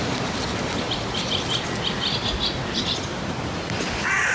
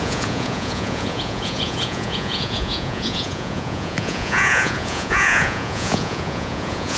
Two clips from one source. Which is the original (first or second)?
first